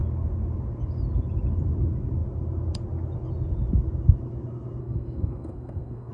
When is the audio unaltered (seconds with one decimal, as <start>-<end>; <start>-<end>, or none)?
0.0-4.8